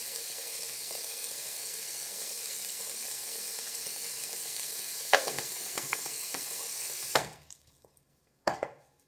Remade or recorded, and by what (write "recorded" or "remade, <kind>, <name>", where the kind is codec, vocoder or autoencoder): remade, codec, SNAC